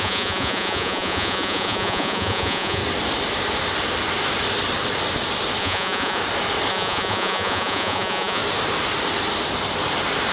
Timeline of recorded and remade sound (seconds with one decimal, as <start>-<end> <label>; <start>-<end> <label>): 0.0-2.8 remade; 2.8-5.6 recorded; 5.6-6.2 remade; 6.2-6.7 recorded; 6.7-8.4 remade; 8.4-10.3 recorded